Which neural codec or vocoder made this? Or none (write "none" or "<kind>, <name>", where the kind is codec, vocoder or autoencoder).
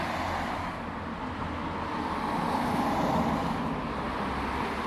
none